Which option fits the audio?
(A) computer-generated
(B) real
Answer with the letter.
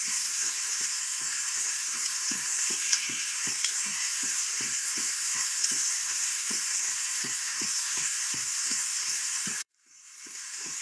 A